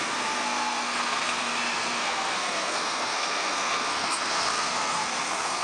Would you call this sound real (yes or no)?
no